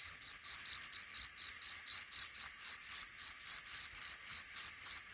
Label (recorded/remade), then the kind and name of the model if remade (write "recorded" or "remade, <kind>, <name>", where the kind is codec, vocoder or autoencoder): recorded